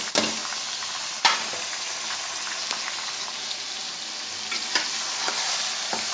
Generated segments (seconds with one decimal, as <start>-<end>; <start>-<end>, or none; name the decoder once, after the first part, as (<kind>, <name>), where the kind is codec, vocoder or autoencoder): none